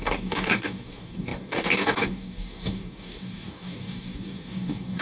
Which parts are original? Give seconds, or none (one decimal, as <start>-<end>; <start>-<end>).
none